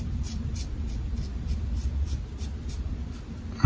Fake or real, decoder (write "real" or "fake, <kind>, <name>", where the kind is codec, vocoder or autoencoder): real